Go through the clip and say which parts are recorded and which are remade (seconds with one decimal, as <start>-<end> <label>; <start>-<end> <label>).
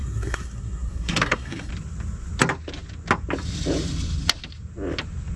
0.0-1.7 remade; 1.7-5.4 recorded